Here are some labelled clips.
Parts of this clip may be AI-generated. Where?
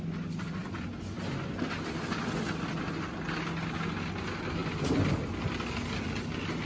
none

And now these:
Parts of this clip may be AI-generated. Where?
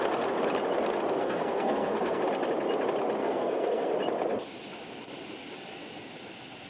1.2-2.2 (codec, SNAC); 3.2-3.9